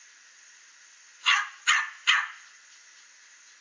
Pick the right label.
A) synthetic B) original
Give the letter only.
B